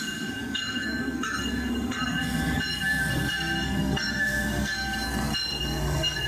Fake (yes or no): yes